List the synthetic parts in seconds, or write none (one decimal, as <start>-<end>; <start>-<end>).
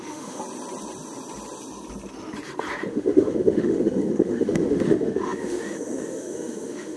0.0-0.4; 2.9-7.0